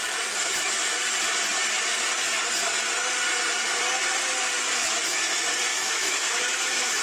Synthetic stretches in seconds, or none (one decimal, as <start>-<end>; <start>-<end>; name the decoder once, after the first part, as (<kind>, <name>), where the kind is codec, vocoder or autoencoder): 5.7-7.0 (autoencoder, DAC-VAE)